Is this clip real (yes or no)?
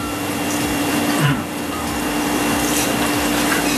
no